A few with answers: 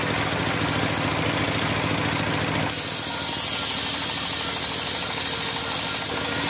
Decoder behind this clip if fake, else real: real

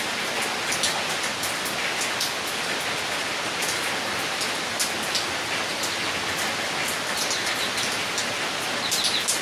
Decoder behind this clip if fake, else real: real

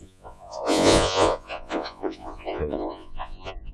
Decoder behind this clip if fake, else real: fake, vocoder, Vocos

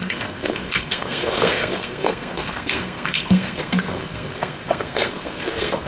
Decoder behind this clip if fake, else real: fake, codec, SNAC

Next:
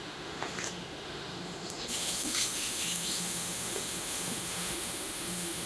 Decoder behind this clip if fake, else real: fake, autoencoder, DAC-VAE